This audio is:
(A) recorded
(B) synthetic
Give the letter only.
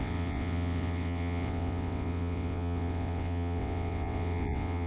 B